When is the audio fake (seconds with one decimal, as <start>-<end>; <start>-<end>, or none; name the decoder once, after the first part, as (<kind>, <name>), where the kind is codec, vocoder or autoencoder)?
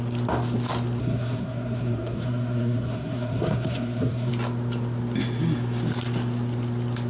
1.0-4.3 (codec, SNAC)